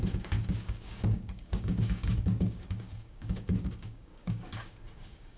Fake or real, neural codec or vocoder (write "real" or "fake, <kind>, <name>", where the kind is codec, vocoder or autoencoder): fake, codec, DAC